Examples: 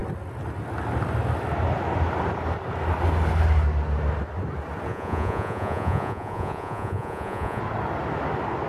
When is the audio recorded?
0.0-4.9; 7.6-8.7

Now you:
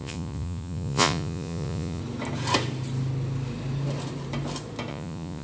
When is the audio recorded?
2.0-4.9

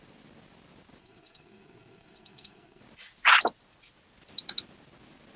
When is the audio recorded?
0.0-1.0; 2.8-5.4

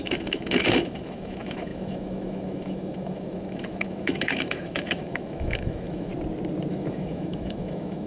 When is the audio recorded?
6.1-6.7

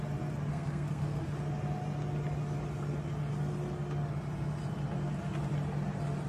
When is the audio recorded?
0.0-0.5; 1.2-6.3